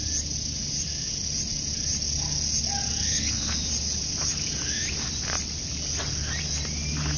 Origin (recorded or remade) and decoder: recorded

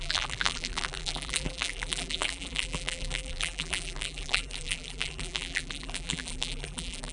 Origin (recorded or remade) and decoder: remade, vocoder, BigVGAN v2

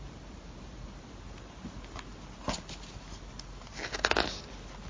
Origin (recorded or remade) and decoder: recorded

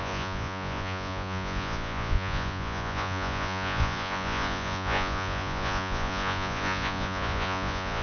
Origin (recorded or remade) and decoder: remade, vocoder, Vocos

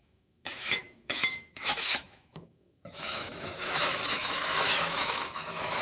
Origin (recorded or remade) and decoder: remade, autoencoder, DAC-VAE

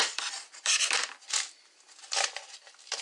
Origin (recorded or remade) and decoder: recorded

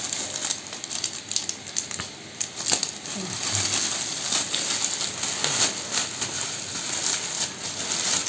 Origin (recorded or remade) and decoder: recorded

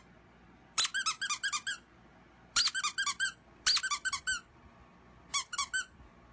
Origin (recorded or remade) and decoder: recorded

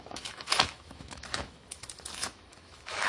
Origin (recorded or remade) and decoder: remade, autoencoder, DAC-VAE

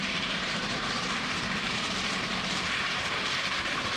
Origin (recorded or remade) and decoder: remade, vocoder, BigVGAN v2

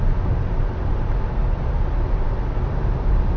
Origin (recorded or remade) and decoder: recorded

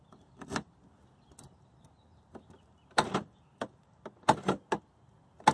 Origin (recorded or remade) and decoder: recorded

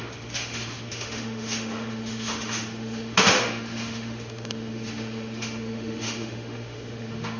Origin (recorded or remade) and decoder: remade, autoencoder, DAC-VAE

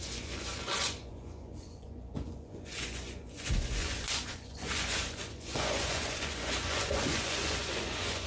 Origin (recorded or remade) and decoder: remade, vocoder, Vocos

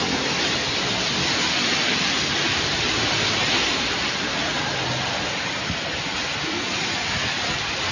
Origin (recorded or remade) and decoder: recorded